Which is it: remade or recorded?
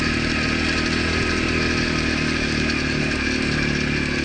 recorded